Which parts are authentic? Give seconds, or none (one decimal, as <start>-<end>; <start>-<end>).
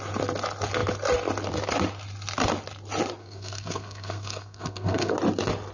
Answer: 0.0-3.2; 5.1-5.7